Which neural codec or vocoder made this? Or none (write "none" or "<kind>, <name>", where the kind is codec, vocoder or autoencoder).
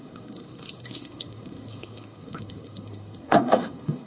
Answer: codec, SNAC